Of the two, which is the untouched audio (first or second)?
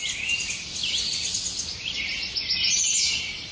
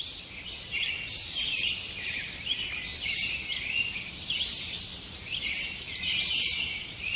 first